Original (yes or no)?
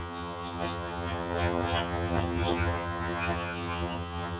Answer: no